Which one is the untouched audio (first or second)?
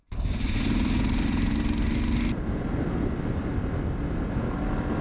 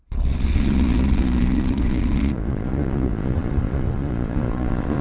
first